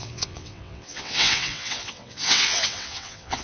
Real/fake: fake